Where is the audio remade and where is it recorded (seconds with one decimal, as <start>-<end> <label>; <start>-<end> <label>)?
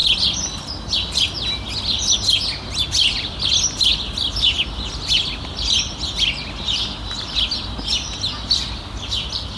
0.0-9.6 recorded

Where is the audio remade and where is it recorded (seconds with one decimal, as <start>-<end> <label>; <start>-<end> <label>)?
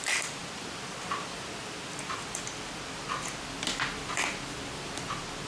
0.0-5.5 recorded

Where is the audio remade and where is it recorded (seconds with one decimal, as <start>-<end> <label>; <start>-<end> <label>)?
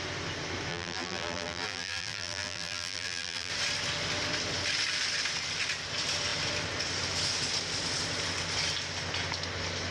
0.0-0.7 recorded; 0.7-3.5 remade; 3.5-9.9 recorded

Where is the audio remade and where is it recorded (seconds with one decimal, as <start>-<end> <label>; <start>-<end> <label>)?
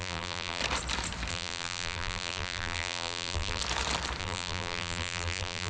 0.0-0.6 remade; 0.6-1.3 recorded; 1.3-3.6 remade; 3.6-4.2 recorded; 4.2-5.7 remade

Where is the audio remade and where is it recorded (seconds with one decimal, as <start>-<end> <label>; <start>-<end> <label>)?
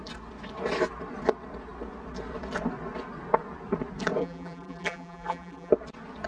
0.0-4.2 recorded; 4.2-5.7 remade; 5.7-6.3 recorded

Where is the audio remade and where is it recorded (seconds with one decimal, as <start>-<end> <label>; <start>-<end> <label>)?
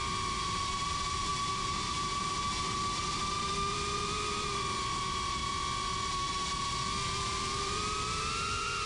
0.0-5.4 remade; 5.4-7.5 recorded; 7.5-8.9 remade